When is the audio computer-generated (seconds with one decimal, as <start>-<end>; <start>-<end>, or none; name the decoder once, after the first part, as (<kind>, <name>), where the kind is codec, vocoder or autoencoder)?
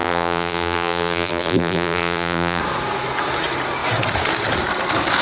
0.0-2.6 (vocoder, BigVGAN v2)